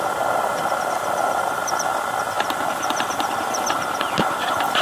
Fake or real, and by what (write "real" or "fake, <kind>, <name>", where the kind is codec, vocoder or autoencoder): fake, vocoder, BigVGAN v2